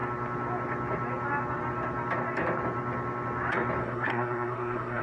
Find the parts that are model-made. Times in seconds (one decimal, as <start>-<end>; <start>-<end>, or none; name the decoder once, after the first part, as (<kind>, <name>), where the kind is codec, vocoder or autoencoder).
3.8-5.0 (codec, SNAC)